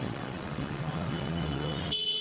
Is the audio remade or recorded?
remade